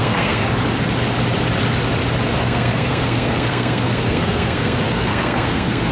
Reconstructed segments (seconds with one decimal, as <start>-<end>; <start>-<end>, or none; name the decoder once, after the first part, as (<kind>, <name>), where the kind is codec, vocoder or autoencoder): 0.0-0.4 (codec, SNAC); 2.3-5.9